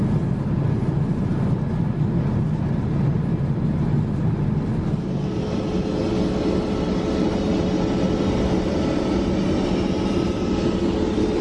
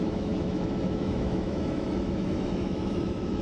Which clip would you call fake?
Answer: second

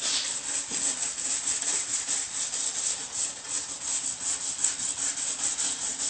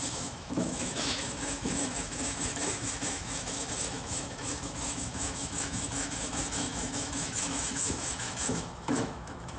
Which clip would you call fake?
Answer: second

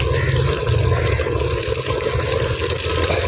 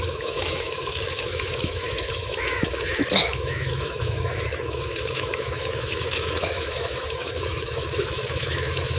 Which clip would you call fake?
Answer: second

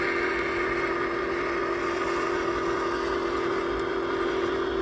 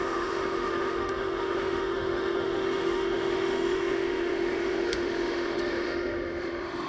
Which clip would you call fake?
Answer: second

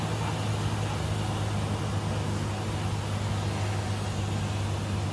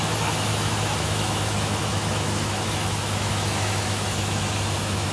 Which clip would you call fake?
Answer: second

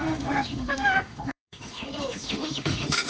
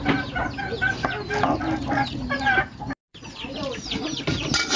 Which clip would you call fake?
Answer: first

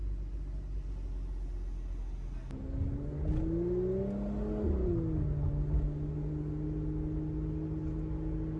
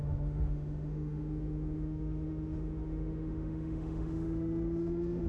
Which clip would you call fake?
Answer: second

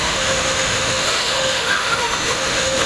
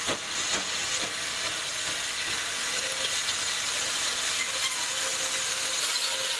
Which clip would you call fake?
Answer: first